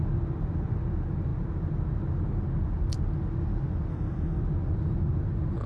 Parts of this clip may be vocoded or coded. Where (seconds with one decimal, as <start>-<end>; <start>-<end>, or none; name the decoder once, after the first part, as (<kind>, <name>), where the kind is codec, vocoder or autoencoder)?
3.9-4.4 (codec, SNAC)